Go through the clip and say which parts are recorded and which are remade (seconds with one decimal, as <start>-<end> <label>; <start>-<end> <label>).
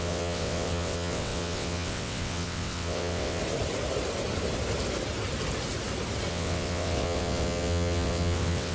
0.0-3.4 remade; 3.4-6.3 recorded; 6.3-8.7 remade